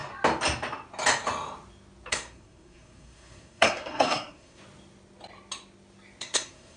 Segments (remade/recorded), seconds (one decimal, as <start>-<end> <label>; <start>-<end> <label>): 0.0-2.1 recorded; 2.1-4.6 remade; 4.6-6.2 recorded; 6.2-6.8 remade